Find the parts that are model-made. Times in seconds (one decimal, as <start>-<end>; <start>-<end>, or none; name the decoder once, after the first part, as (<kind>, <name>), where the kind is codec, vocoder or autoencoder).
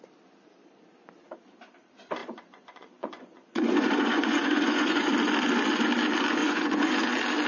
2.2-5.1 (vocoder, Vocos); 6.4-6.9